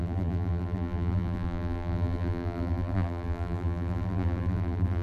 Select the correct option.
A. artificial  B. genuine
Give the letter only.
A